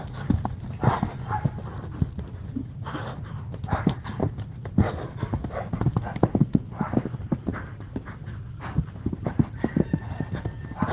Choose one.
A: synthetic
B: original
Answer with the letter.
B